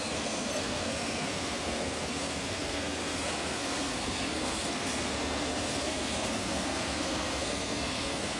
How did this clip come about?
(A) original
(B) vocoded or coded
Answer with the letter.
B